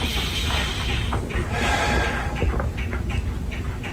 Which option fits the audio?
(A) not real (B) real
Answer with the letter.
B